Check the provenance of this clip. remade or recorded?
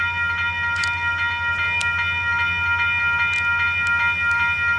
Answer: recorded